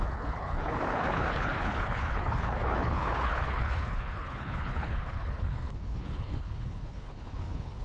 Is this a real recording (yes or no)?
no